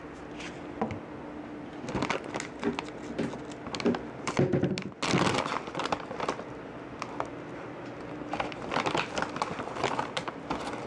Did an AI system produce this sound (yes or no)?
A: no